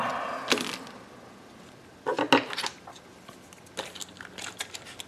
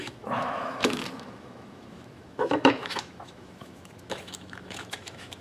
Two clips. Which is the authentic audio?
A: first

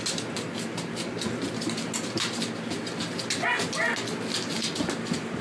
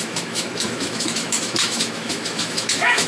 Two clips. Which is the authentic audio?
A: first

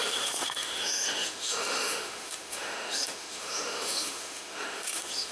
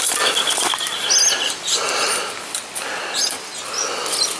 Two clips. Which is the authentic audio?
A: second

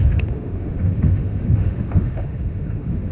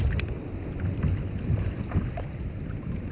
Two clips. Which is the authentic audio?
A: second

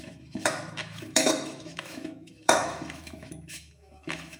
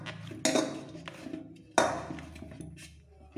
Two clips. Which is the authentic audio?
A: second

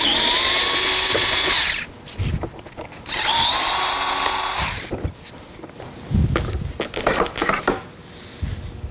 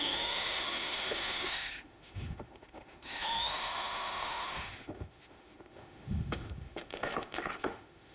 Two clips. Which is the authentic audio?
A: first